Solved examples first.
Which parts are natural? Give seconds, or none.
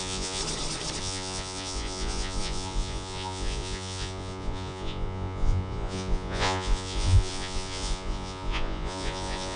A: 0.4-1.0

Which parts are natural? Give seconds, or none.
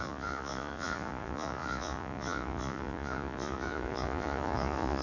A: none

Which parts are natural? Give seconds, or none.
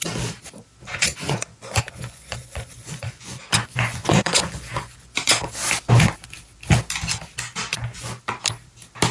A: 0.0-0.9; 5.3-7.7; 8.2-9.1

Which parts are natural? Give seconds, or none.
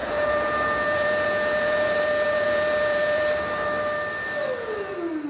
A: 3.2-5.3